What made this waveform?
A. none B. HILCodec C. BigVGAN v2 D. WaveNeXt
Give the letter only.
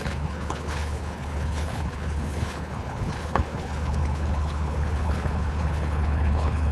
B